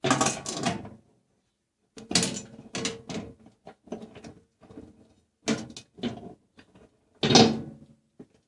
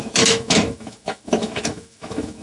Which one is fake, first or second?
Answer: second